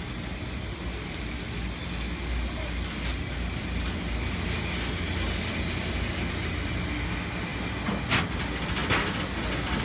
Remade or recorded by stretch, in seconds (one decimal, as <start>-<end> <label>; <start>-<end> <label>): 0.0-9.8 recorded